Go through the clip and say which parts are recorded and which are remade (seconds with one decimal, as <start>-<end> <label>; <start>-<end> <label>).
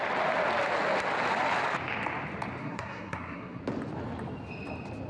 0.0-2.6 recorded; 2.6-3.6 remade; 3.6-5.1 recorded